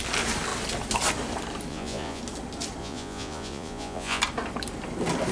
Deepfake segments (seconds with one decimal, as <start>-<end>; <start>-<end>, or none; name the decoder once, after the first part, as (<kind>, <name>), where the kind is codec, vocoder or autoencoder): 1.7-2.2 (vocoder, Vocos); 2.8-4.2